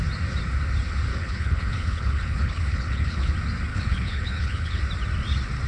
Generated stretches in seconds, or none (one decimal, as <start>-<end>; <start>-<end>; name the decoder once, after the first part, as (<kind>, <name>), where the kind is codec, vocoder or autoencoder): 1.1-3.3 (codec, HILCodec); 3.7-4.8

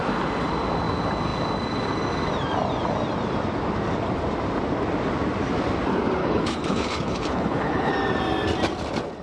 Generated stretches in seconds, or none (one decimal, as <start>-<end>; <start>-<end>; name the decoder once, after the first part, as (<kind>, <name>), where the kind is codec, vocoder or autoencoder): 6.2-7.9 (codec, HILCodec)

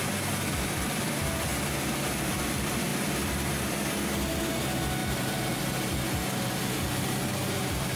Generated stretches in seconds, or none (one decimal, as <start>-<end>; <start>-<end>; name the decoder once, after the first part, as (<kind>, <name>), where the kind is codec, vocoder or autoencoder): 2.9-4.3 (vocoder, BigVGAN v2); 5.0-5.6

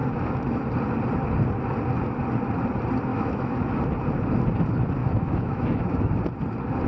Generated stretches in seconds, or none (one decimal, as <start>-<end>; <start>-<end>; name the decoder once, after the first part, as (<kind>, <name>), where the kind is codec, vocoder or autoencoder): 0.0-0.7 (autoencoder, DAC-VAE); 3.1-3.8; 5.0-6.2